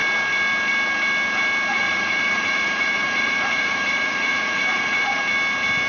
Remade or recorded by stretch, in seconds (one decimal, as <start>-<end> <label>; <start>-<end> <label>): 0.0-1.7 recorded; 1.7-5.2 remade; 5.2-5.9 recorded